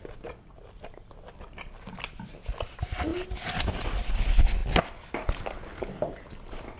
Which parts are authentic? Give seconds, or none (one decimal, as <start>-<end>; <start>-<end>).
0.0-6.8